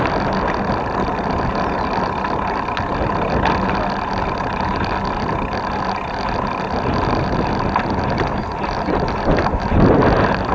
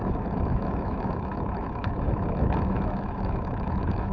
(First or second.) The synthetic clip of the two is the second